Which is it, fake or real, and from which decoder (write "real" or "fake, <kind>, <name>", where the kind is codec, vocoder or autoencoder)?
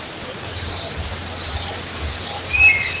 real